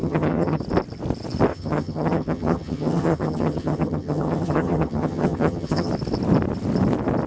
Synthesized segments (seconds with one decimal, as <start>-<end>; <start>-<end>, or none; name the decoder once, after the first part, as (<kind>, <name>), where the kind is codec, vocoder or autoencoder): 0.0-0.6 (vocoder, HiFi-GAN); 1.5-5.9